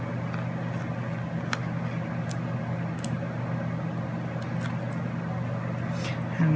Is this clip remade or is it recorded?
recorded